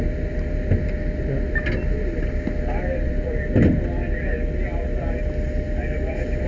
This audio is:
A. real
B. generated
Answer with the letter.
A